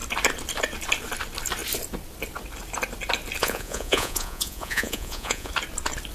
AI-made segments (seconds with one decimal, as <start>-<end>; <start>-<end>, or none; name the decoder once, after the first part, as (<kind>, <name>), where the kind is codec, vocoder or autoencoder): 3.4-5.5 (vocoder, Vocos)